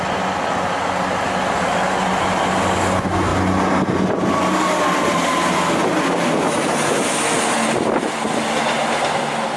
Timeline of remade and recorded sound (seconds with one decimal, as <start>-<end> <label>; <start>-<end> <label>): 0.0-9.6 recorded